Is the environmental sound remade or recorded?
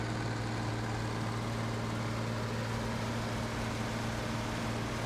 recorded